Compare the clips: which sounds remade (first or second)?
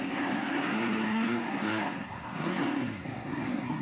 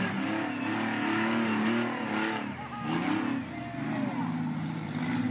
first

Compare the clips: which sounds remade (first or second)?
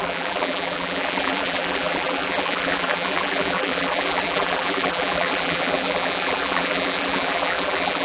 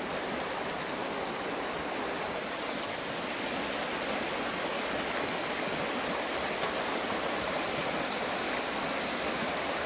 first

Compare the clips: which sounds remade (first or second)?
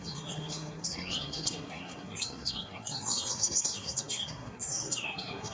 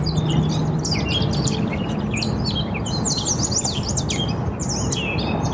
first